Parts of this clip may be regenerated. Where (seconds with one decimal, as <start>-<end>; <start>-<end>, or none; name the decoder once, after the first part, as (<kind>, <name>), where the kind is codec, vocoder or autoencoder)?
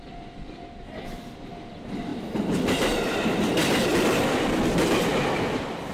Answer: none